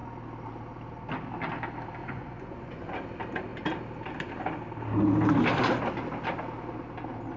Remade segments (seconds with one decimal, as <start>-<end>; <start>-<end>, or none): 2.0-2.9